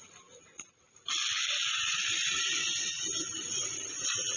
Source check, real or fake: real